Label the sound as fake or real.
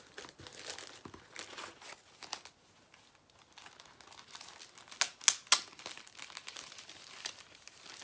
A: real